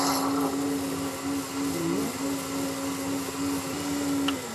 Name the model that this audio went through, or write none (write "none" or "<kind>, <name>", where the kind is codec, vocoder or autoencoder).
none